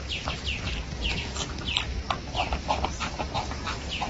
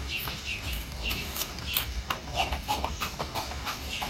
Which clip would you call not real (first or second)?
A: second